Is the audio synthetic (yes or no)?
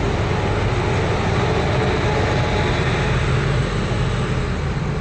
no